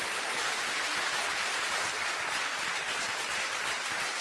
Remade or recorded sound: remade